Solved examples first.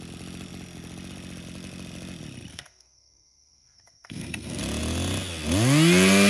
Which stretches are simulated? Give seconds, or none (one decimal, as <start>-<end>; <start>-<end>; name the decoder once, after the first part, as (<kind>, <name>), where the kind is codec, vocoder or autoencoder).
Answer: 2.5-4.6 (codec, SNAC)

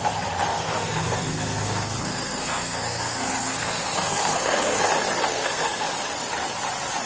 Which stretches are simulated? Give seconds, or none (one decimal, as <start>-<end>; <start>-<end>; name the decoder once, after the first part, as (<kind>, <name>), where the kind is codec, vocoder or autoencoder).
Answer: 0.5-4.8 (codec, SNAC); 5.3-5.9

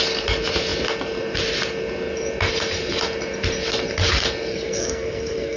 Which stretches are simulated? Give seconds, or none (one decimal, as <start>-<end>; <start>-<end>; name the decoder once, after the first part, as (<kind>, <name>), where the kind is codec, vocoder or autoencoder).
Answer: 4.5-5.6 (codec, SNAC)

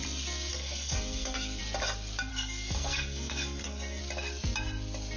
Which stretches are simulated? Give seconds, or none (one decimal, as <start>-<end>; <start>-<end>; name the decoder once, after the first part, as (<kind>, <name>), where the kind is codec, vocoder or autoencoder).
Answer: 0.5-1.6 (codec, SNAC); 2.3-4.0

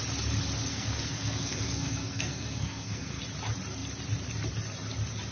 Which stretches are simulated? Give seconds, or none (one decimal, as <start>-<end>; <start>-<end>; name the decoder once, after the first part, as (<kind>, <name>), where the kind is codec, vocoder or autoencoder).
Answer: 0.7-3.2 (codec, SNAC)

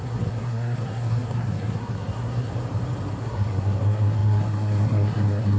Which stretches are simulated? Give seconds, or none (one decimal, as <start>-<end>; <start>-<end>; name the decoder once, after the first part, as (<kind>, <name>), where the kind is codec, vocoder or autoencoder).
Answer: 0.0-2.5 (codec, SNAC); 3.2-5.6

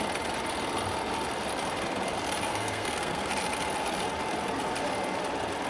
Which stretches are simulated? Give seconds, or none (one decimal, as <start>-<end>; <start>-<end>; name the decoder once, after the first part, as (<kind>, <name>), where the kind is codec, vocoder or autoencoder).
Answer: 2.5-3.3 (codec, SNAC)

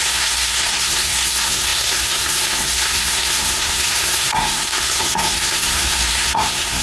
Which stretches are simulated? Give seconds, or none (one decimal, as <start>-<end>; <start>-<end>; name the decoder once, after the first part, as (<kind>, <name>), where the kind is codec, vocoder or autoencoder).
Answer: 0.0-6.8 (codec, SNAC)